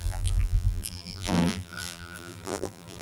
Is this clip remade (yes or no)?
yes